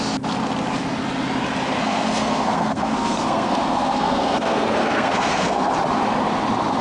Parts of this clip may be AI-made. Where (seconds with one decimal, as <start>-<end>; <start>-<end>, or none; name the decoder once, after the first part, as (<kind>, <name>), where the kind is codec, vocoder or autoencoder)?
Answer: 1.8-5.7 (codec, SNAC)